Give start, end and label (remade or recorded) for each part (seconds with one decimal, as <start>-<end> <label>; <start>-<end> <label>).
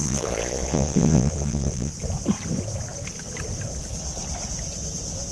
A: 0.0-1.9 remade; 1.9-5.3 recorded